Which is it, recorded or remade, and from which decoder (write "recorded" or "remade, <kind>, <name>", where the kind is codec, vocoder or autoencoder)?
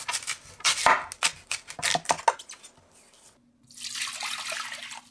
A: recorded